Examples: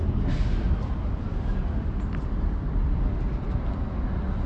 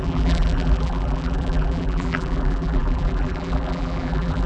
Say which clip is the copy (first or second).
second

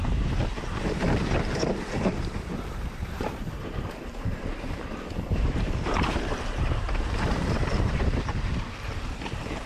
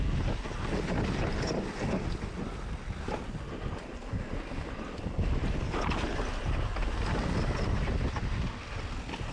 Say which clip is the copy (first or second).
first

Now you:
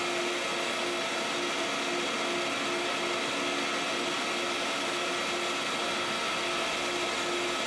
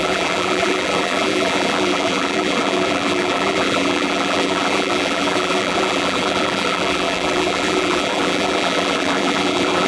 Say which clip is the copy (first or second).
second